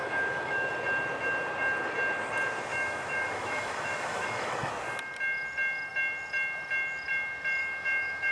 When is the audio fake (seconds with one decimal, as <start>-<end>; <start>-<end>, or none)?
0.0-0.7; 2.7-4.7; 7.6-8.3